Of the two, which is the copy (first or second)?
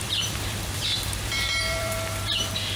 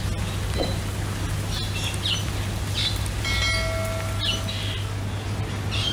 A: first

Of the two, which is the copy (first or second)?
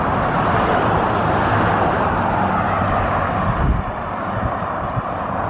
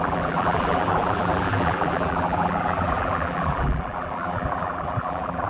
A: second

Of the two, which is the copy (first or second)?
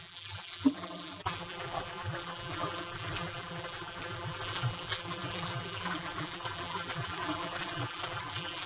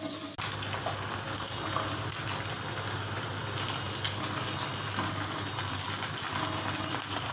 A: first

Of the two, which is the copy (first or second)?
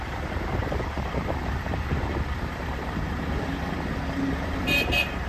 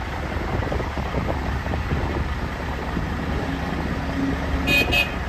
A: first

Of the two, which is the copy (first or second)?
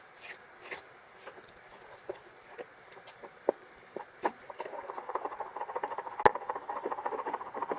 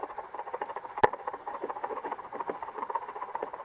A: second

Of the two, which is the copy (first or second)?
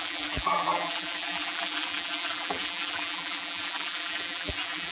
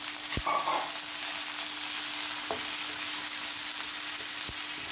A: first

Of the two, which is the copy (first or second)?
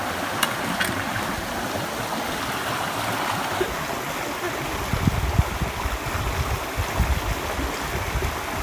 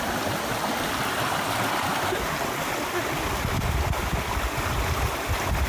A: second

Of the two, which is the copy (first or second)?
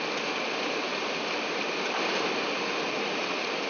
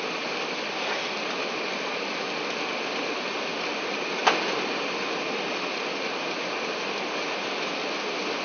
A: first